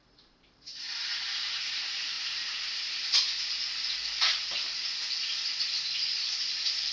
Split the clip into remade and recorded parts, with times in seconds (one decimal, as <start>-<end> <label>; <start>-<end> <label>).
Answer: 0.0-1.1 remade; 1.1-5.2 recorded; 5.2-6.9 remade